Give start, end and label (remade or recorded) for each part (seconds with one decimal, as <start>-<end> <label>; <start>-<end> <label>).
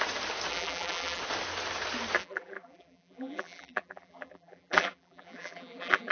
0.0-0.5 recorded; 0.5-1.2 remade; 1.2-2.2 recorded; 2.2-6.1 remade